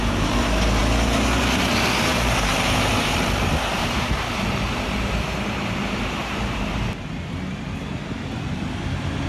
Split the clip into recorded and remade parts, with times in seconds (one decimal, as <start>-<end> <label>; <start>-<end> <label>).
0.0-2.1 recorded; 2.1-6.6 remade; 6.6-9.3 recorded